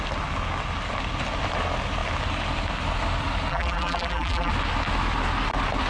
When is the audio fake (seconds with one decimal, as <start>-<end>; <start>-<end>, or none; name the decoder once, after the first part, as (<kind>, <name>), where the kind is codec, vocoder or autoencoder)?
3.5-4.5 (vocoder, BigVGAN v2)